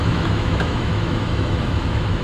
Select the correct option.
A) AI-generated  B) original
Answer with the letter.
A